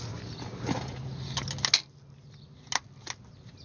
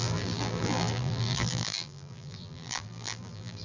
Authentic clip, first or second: first